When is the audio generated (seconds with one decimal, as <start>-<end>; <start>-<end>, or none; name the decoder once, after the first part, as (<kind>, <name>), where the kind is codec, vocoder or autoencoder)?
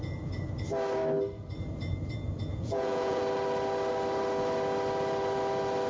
2.5-3.2 (vocoder, Vocos)